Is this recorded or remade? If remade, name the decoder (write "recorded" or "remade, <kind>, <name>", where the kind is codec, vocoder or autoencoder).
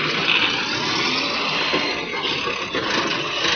recorded